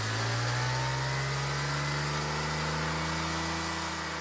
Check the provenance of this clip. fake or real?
real